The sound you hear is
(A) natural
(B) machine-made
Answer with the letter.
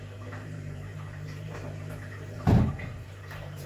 B